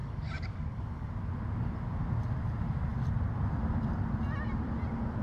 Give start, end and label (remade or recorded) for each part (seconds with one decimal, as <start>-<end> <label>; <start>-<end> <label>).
0.0-1.1 remade; 1.1-5.2 recorded